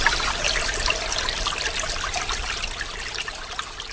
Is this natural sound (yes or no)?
yes